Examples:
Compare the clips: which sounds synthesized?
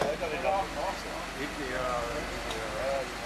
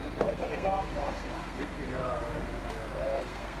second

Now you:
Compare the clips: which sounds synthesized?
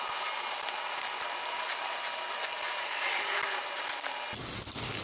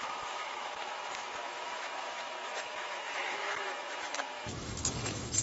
second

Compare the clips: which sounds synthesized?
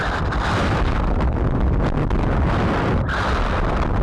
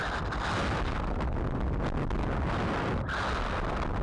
first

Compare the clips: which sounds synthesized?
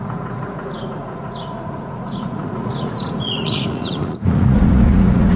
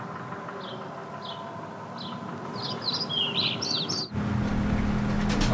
first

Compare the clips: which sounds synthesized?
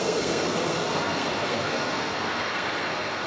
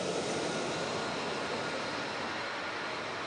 first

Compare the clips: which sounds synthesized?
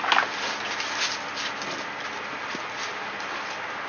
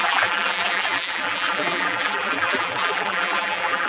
second